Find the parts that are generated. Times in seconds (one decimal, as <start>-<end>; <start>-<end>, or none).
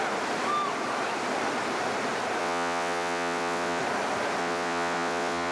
2.4-3.8; 4.4-5.5